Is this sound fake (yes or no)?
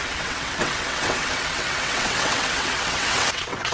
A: yes